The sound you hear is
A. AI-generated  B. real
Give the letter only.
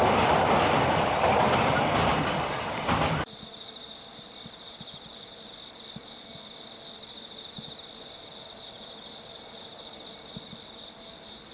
B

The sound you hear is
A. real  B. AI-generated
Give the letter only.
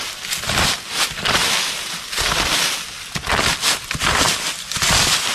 A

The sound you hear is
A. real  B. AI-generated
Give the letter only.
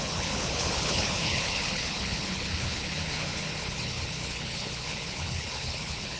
B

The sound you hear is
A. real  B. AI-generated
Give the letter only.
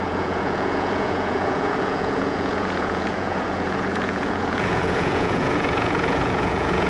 B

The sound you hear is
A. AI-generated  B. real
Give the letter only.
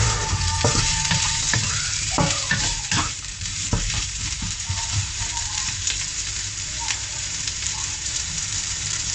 A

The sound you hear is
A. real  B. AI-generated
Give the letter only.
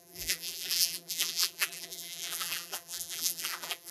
B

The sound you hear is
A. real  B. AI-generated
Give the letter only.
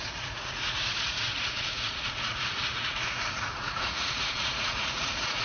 B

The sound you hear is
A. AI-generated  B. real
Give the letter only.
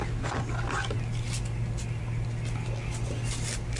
B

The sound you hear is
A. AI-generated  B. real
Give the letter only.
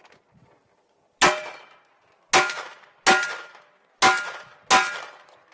B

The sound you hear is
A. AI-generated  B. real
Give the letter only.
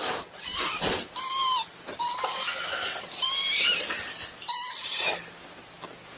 B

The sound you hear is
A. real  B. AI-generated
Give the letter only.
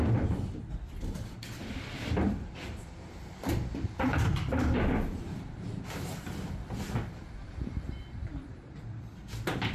B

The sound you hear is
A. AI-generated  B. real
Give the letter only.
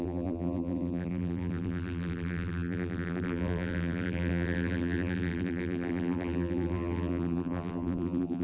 A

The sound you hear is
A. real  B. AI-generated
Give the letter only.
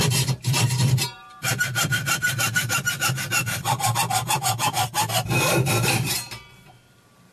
B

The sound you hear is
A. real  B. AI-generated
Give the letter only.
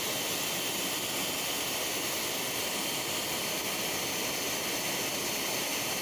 A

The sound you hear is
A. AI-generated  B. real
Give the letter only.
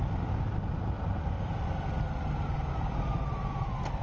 B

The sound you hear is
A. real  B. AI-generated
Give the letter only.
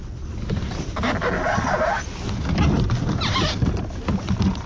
A